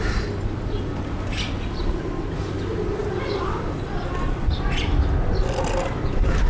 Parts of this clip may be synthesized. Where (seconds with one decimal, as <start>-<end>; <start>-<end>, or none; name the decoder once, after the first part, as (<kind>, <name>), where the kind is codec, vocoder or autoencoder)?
none